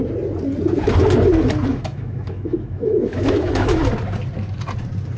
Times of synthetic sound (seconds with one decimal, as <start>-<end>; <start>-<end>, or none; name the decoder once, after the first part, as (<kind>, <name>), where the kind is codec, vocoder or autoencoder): 1.7-3.8 (autoencoder, DAC-VAE)